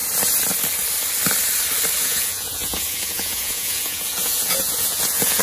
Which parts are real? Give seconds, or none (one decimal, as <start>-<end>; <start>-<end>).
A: 0.0-2.0